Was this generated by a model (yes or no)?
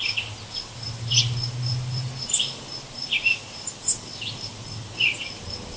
no